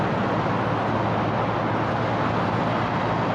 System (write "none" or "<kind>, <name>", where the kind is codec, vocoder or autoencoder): none